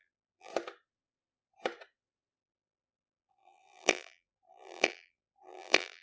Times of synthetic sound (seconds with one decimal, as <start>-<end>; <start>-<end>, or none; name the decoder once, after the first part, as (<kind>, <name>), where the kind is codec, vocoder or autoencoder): 0.0-0.5 (vocoder, BigVGAN v2); 2.4-6.0